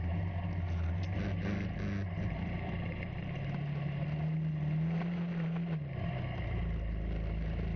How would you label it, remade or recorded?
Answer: recorded